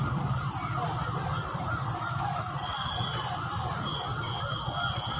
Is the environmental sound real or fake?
real